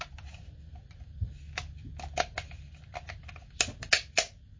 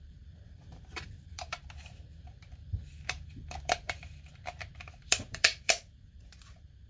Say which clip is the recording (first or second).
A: first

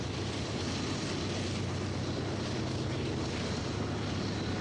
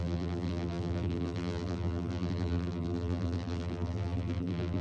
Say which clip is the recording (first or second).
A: first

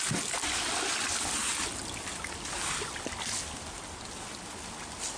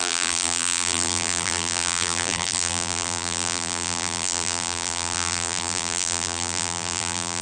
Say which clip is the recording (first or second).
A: first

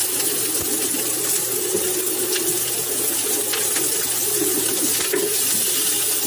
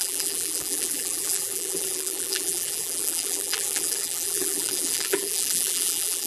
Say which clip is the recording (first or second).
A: first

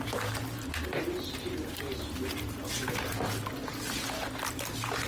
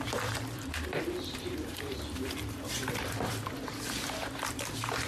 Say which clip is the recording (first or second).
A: first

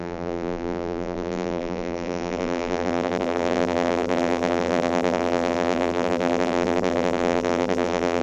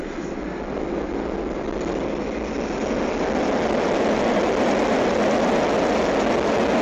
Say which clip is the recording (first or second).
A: second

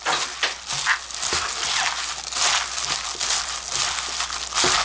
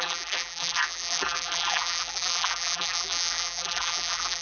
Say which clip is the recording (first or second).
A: first